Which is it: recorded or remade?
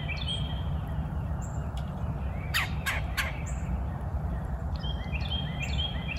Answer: remade